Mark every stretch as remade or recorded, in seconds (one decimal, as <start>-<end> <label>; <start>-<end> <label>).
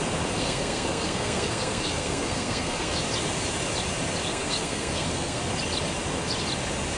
0.0-0.4 recorded; 0.4-3.0 remade; 3.0-4.3 recorded; 4.3-5.4 remade; 5.4-7.0 recorded